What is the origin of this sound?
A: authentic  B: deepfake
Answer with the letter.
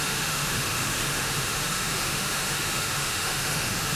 B